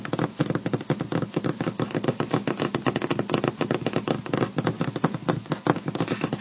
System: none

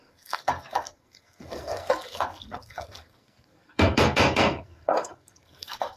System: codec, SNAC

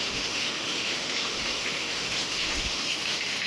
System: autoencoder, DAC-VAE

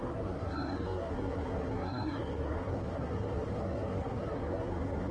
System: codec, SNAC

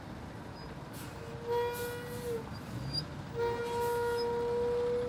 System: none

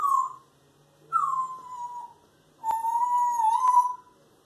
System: none